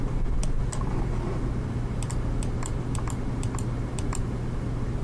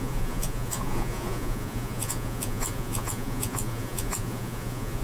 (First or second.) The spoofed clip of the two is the second